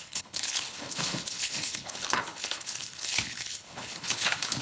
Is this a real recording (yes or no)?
no